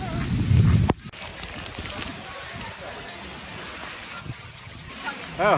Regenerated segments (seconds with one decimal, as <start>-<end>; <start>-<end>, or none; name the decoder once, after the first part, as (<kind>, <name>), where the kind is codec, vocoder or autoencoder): 4.2-4.9 (vocoder, HiFi-GAN)